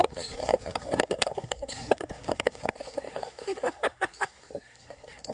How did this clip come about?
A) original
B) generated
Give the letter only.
B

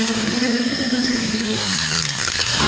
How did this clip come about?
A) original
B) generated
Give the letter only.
B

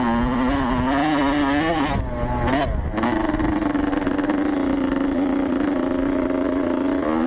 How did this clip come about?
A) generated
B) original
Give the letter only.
B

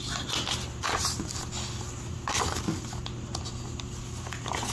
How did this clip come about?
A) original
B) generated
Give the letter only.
A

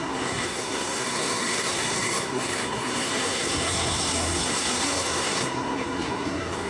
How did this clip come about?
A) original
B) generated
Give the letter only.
B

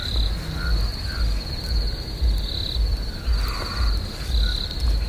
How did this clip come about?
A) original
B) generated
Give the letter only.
A